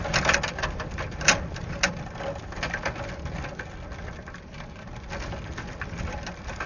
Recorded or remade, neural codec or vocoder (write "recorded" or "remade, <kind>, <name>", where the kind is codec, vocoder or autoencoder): recorded